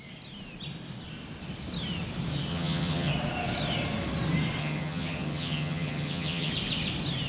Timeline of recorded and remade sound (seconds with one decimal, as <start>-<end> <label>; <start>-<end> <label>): 0.0-2.5 recorded; 2.5-3.1 remade; 3.1-4.6 recorded; 4.6-6.5 remade; 6.5-7.3 recorded